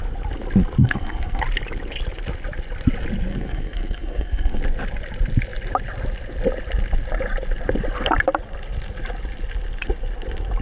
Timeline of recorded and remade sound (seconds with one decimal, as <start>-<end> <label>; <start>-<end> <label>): 0.0-0.8 recorded; 0.8-1.4 remade; 1.4-3.3 recorded; 3.3-4.6 remade; 4.6-10.6 recorded